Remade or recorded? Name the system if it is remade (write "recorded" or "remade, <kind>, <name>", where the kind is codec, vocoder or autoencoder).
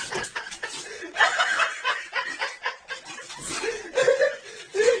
remade, vocoder, WaveNeXt